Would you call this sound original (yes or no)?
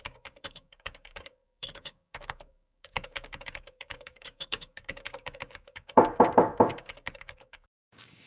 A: no